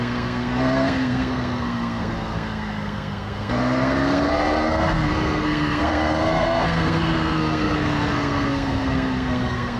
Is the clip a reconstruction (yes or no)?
yes